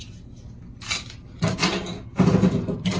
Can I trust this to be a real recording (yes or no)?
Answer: yes